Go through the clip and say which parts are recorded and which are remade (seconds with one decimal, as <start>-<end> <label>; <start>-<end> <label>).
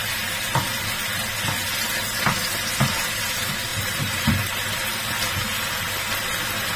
0.0-0.6 remade; 0.6-3.7 recorded; 3.7-4.3 remade; 4.3-6.8 recorded